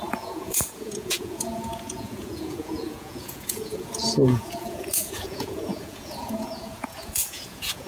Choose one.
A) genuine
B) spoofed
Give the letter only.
B